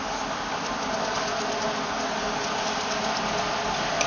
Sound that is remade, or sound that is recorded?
recorded